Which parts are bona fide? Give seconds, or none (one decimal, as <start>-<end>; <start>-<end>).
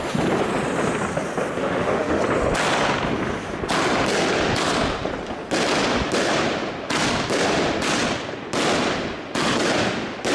0.0-1.6; 2.2-10.3